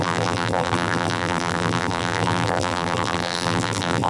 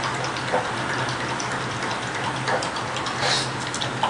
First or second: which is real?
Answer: second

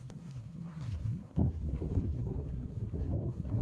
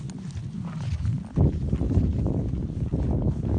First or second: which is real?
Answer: second